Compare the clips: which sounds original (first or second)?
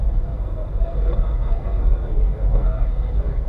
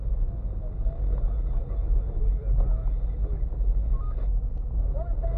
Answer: second